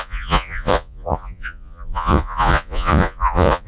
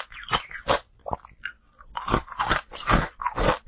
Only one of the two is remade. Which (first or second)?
first